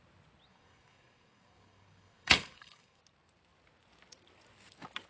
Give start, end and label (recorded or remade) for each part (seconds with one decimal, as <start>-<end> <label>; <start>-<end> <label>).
0.0-0.5 recorded; 0.5-3.0 remade; 3.0-5.1 recorded